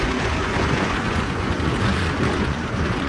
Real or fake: fake